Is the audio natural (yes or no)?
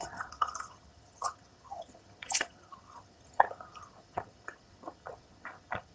no